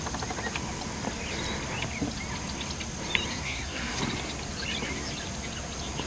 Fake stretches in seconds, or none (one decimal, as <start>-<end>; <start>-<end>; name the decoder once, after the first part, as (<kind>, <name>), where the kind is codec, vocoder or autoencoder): 3.3-4.0 (codec, SNAC)